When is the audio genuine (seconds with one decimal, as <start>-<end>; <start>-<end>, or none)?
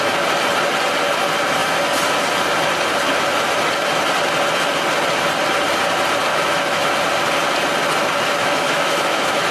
0.0-6.3; 6.9-8.4